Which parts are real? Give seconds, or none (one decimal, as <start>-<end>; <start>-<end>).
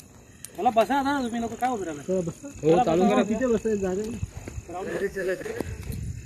0.0-4.9; 5.5-6.3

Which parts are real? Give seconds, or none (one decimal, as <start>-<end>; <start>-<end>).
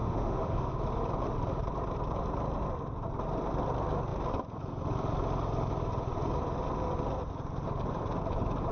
0.7-8.7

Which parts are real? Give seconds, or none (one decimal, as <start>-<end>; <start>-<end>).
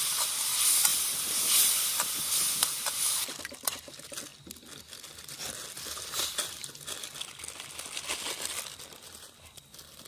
0.0-10.1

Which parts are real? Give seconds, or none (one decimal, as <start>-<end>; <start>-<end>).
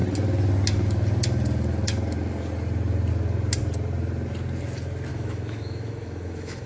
0.0-5.1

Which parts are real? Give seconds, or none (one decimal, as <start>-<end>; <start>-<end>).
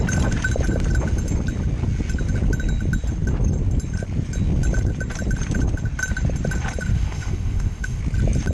0.0-6.9; 8.0-8.5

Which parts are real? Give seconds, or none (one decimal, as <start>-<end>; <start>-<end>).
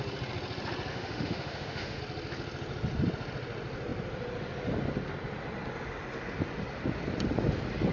0.0-0.9; 2.0-7.9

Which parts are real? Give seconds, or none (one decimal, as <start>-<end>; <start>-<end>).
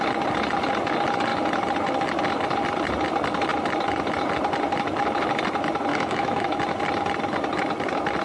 0.0-5.9; 6.6-8.2